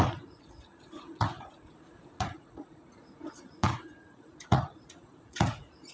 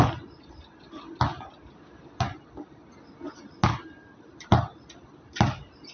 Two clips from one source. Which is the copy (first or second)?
first